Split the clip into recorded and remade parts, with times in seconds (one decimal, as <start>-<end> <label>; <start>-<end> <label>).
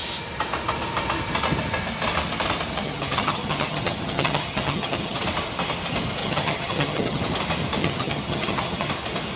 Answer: 0.0-2.7 recorded; 2.7-5.2 remade; 5.2-6.2 recorded; 6.2-7.2 remade; 7.2-7.8 recorded; 7.8-8.9 remade; 8.9-9.4 recorded